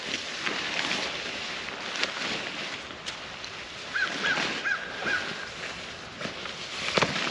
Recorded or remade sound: recorded